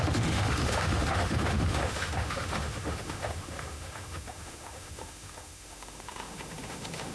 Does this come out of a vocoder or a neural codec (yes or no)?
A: yes